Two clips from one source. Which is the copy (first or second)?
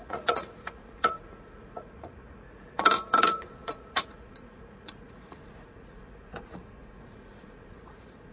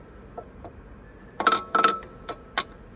first